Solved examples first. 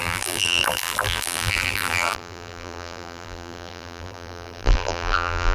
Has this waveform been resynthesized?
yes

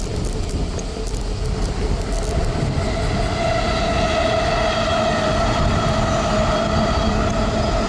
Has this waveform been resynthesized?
no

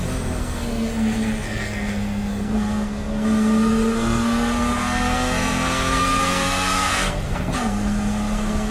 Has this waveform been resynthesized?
yes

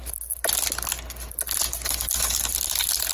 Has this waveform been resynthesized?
no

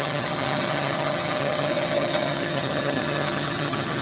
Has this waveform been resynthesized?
yes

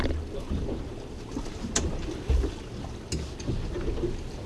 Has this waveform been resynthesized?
no